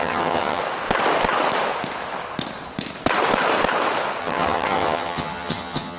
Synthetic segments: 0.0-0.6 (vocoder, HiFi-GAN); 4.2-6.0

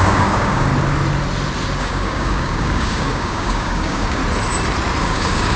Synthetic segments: 0.0-0.7 (codec, DAC); 1.8-4.2; 5.0-5.6

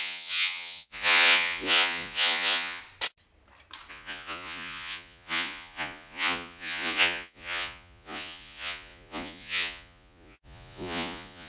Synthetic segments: 0.0-2.8 (vocoder, Vocos); 3.9-11.5

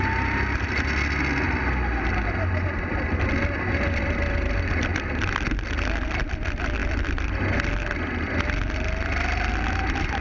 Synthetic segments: none